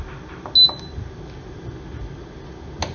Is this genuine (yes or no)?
yes